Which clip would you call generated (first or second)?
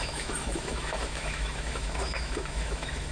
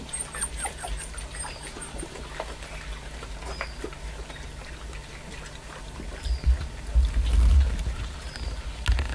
first